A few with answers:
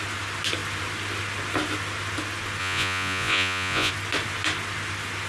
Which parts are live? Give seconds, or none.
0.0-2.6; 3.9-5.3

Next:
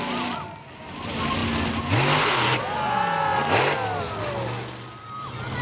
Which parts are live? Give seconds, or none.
0.0-5.6